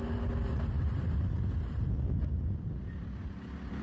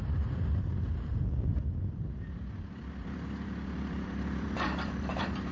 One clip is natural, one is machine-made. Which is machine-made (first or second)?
second